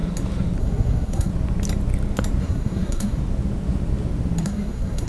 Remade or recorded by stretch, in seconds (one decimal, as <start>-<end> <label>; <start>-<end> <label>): 0.0-0.6 recorded; 0.6-1.3 remade; 1.3-2.4 recorded; 2.4-3.2 remade; 3.2-4.4 recorded; 4.4-5.1 remade